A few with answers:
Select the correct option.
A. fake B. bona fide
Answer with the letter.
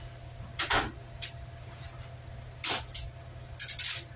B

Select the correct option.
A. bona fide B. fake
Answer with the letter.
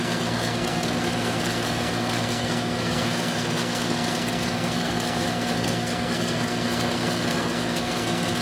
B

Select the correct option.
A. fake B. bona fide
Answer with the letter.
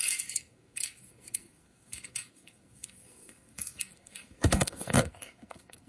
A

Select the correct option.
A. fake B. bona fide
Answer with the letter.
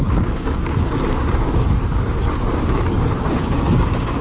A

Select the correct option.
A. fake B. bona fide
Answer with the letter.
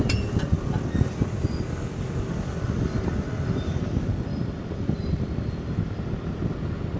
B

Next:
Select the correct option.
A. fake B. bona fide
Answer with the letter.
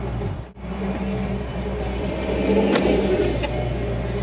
B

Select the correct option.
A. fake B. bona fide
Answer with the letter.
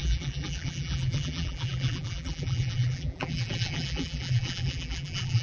A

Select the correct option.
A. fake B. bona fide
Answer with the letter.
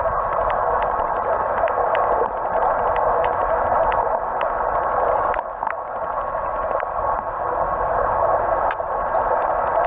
B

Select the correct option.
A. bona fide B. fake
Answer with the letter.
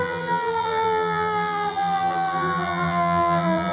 B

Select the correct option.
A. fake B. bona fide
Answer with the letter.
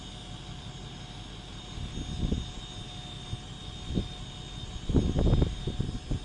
B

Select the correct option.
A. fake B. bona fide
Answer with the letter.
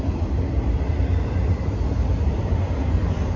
A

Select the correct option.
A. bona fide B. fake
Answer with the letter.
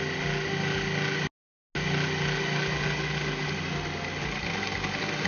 A